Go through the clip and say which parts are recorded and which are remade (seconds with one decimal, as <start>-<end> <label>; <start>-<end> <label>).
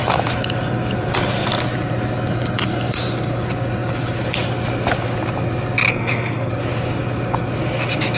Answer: 0.0-5.9 recorded; 5.9-6.5 remade; 6.5-8.2 recorded